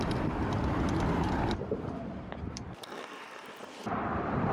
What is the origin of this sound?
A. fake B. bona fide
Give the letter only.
A